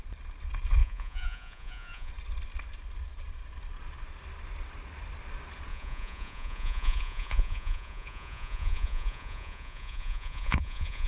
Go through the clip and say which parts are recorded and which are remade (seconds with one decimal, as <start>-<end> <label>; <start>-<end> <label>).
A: 0.0-0.8 recorded; 0.8-2.1 remade; 2.1-5.7 recorded; 5.7-11.1 remade